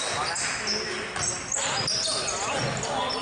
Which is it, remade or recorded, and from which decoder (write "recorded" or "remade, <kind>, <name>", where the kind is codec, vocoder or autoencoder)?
recorded